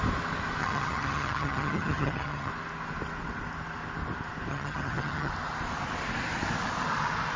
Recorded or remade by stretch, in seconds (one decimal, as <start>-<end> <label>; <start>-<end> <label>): 0.0-0.6 recorded; 0.6-2.5 remade; 2.5-4.5 recorded; 4.5-5.3 remade; 5.3-7.4 recorded